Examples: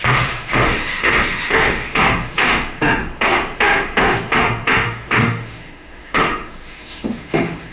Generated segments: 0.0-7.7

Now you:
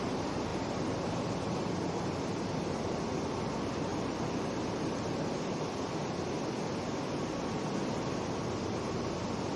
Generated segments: 0.5-1.3; 3.9-4.6

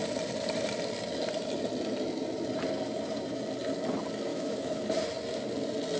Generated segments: 4.3-4.8

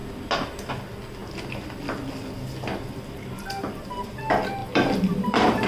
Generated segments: 4.6-5.7

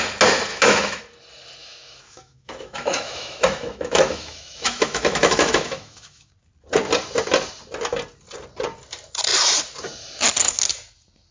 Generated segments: 0.5-1.0; 1.6-6.3

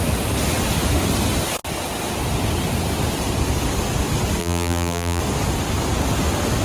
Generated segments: 4.4-5.2

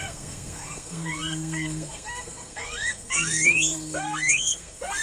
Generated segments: 0.0-5.0

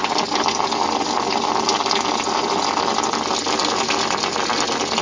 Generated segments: none